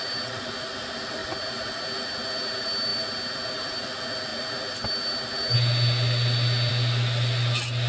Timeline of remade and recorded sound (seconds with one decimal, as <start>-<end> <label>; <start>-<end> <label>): 0.0-7.9 recorded